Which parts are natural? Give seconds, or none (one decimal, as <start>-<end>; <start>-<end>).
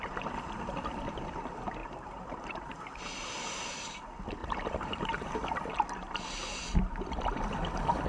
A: 0.0-1.8; 2.8-4.4; 5.3-8.1